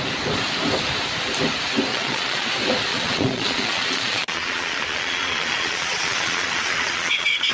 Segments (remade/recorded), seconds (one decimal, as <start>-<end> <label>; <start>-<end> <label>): 0.0-1.9 recorded; 1.9-2.5 remade; 2.5-2.9 recorded; 2.9-7.5 remade